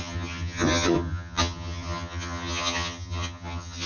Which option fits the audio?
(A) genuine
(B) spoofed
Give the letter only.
B